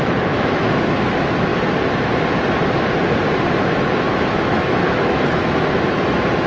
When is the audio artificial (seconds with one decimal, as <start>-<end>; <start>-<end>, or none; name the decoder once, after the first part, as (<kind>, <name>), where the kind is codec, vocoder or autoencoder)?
0.0-1.5 (autoencoder, DAC-VAE); 3.6-6.5